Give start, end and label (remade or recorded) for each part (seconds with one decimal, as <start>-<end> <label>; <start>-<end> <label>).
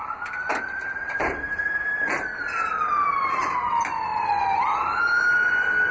0.0-5.9 recorded